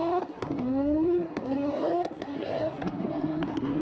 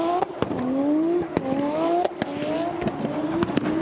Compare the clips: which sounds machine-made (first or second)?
first